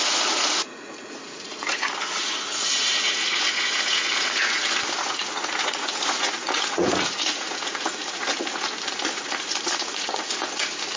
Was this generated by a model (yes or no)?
yes